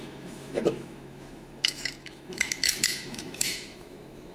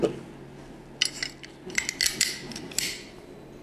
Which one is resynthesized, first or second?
first